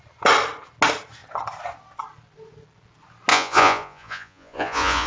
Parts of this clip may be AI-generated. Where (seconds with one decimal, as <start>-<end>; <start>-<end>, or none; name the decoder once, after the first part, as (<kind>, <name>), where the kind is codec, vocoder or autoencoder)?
3.3-5.1 (vocoder, Vocos)